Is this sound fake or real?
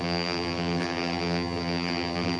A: fake